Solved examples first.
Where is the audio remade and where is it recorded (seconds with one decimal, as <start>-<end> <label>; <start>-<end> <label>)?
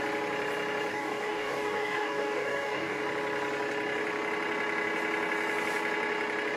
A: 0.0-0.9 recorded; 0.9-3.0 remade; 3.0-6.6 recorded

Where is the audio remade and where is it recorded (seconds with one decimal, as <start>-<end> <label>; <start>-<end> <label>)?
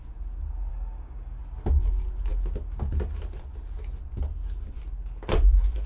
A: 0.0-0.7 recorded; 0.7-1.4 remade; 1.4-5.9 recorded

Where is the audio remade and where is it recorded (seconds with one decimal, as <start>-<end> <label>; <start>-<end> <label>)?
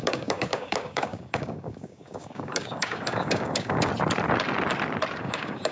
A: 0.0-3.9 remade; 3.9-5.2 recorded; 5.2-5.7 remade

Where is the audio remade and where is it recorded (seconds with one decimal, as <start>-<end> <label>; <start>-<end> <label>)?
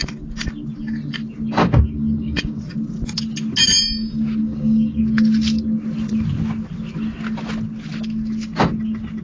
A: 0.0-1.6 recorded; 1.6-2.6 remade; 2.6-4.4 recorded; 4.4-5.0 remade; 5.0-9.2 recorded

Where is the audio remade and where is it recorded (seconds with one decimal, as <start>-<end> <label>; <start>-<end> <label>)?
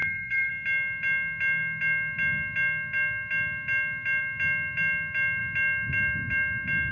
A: 0.0-0.5 remade; 0.5-6.9 recorded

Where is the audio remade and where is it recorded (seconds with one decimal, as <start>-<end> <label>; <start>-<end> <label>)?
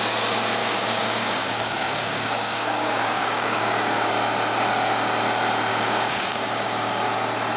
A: 0.0-0.6 recorded; 0.6-4.1 remade; 4.1-5.7 recorded; 5.7-7.1 remade; 7.1-7.6 recorded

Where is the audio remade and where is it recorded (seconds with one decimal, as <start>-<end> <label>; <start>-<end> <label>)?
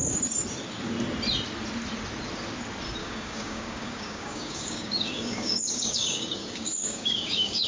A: 0.0-3.0 recorded; 3.0-7.7 remade